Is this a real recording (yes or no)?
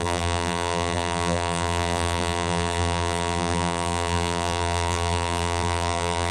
no